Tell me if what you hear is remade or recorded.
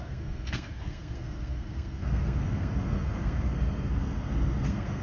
remade